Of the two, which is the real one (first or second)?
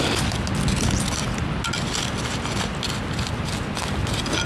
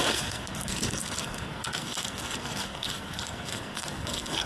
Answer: first